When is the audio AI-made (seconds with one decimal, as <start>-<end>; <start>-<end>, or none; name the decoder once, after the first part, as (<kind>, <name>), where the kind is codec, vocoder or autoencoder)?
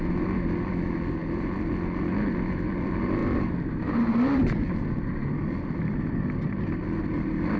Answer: 3.2-4.7 (vocoder, BigVGAN v2)